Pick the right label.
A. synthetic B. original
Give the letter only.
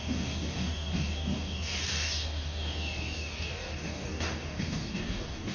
A